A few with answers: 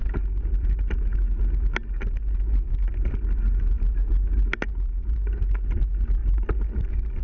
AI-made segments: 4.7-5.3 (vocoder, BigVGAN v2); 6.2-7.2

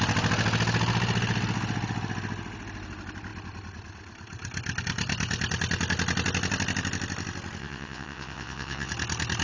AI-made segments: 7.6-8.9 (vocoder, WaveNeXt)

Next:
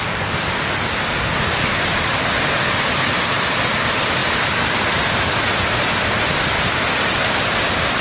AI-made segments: none

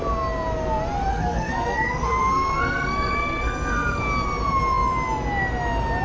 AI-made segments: 1.1-4.0 (codec, SNAC)

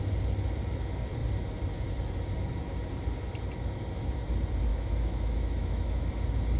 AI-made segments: 4.7-6.1 (autoencoder, DAC-VAE)

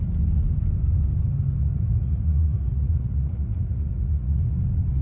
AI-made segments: 1.6-4.6 (vocoder, Vocos)

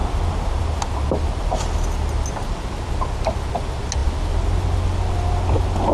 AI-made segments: none

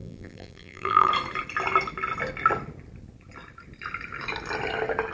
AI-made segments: 0.0-1.1 (vocoder, BigVGAN v2)